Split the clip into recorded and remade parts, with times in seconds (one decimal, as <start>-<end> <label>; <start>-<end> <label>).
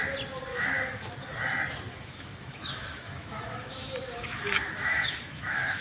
0.0-0.5 recorded; 0.5-1.1 remade; 1.1-1.9 recorded; 1.9-5.8 remade